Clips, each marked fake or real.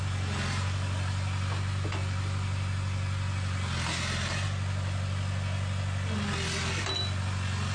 real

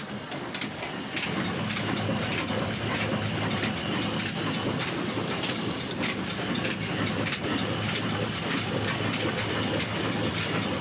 real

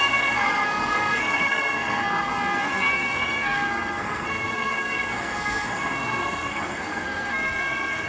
fake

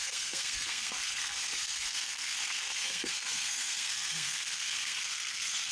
fake